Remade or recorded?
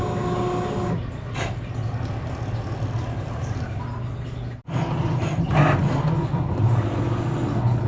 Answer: recorded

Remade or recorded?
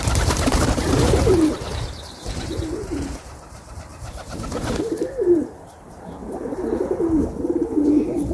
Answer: remade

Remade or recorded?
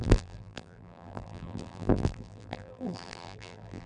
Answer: remade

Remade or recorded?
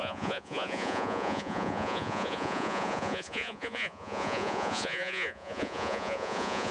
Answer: remade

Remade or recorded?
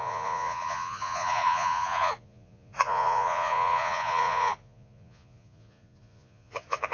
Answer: remade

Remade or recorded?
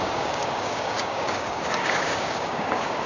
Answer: remade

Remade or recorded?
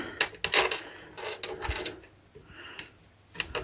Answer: recorded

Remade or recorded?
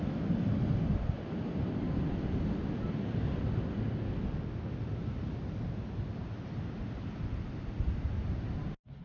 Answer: recorded